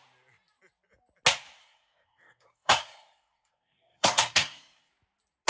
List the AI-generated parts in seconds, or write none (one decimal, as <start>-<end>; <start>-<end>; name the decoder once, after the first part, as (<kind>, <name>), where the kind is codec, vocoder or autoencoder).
1.6-4.9 (codec, SNAC)